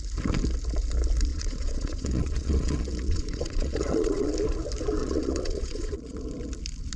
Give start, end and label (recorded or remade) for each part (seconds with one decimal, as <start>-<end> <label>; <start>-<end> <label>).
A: 0.0-1.3 recorded; 1.3-4.3 remade; 4.3-5.0 recorded; 5.0-6.2 remade; 6.2-7.0 recorded